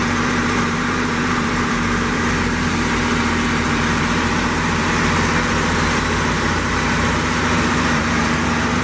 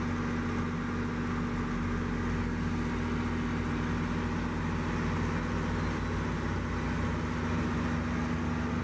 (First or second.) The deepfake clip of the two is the first